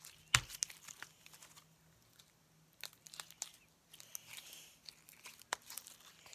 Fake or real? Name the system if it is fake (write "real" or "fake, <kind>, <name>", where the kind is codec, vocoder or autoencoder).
real